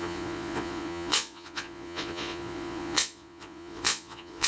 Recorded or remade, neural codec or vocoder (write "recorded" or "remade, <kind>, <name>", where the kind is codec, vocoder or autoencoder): remade, vocoder, Vocos